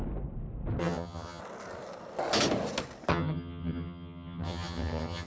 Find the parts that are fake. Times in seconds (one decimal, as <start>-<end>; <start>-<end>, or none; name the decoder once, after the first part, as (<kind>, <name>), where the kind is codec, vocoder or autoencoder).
0.8-1.4 (vocoder, HiFi-GAN); 3.1-5.3